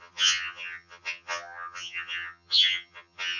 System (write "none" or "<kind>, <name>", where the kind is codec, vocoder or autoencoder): vocoder, HiFi-GAN